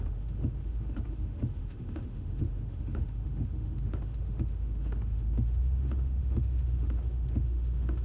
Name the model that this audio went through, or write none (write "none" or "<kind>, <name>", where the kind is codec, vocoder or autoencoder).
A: autoencoder, DAC-VAE